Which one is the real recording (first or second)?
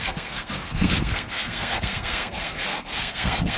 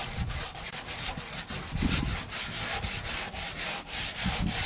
second